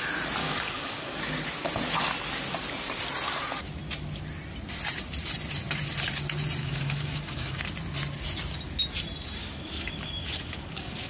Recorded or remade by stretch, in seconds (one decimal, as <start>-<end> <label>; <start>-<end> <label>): 0.0-0.4 recorded; 0.4-1.2 remade; 1.2-6.6 recorded; 6.6-7.6 remade; 7.6-9.4 recorded; 9.4-11.1 remade